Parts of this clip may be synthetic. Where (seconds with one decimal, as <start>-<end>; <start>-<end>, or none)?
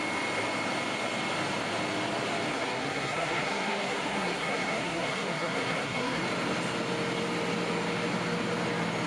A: 2.5-6.2